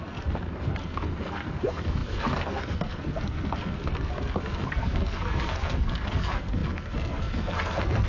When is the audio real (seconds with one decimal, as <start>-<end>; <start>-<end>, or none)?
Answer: none